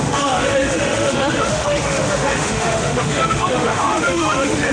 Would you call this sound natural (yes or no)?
no